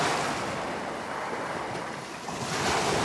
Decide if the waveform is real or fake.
real